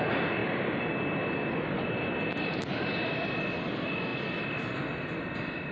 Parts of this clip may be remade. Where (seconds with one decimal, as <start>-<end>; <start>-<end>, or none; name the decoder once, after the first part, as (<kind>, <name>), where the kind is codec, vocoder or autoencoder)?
none